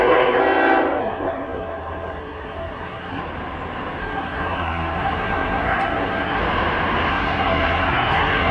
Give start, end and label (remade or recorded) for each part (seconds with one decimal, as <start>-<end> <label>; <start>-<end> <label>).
0.0-0.4 remade; 0.4-1.0 recorded; 1.0-3.2 remade; 3.2-4.0 recorded; 4.0-6.4 remade; 6.4-7.1 recorded; 7.1-8.5 remade